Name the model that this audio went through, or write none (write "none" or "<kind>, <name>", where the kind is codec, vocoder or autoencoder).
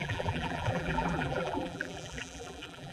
vocoder, BigVGAN v2